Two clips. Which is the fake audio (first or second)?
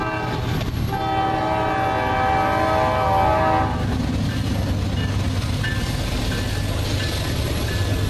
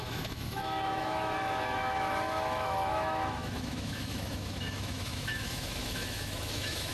second